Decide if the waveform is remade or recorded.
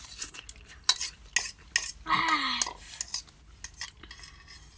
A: recorded